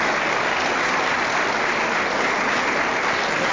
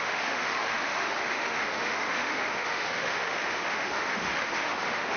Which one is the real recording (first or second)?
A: first